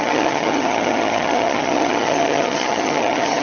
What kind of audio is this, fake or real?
fake